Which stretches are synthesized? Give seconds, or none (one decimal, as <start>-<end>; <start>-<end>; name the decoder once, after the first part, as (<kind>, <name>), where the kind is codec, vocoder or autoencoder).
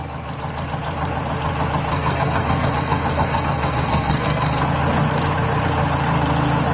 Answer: 1.9-4.6 (codec, SNAC)